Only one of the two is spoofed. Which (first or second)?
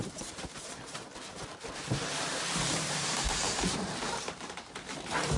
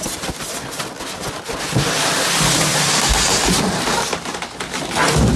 first